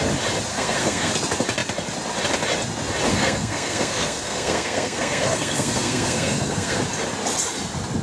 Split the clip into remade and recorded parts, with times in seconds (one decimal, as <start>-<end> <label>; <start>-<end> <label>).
0.0-0.5 recorded; 0.5-1.1 remade; 1.1-3.1 recorded; 3.1-6.8 remade; 6.8-8.0 recorded